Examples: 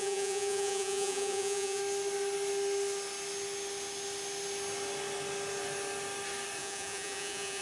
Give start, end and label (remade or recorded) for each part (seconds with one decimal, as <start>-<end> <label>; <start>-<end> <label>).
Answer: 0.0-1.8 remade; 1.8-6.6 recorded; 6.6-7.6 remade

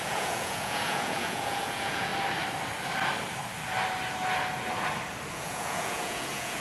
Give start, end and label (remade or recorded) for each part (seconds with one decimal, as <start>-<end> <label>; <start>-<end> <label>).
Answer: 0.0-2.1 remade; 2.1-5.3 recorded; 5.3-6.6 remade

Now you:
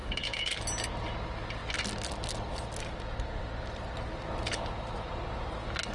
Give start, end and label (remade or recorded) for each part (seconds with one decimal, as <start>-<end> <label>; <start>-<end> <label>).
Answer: 0.0-5.9 recorded

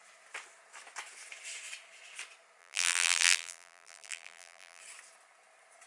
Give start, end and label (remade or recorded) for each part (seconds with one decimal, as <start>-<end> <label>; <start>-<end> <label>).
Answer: 0.0-2.6 recorded; 2.6-4.8 remade; 4.8-5.9 recorded

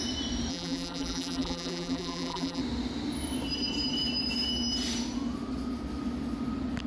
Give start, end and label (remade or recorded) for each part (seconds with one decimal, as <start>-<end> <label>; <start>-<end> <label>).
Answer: 0.0-0.5 recorded; 0.5-2.6 remade; 2.6-6.9 recorded